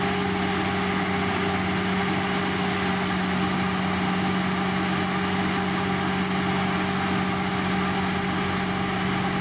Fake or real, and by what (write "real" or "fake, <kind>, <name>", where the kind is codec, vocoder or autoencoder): real